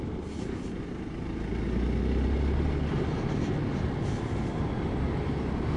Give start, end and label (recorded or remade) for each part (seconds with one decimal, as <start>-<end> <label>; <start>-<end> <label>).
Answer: 0.0-5.8 recorded